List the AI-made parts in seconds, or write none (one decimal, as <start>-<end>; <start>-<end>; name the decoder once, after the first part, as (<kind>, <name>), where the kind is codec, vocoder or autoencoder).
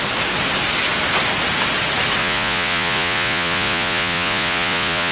2.2-5.1 (vocoder, Vocos)